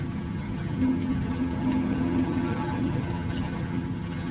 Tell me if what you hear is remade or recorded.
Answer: remade